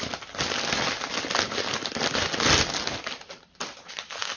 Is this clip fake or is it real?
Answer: real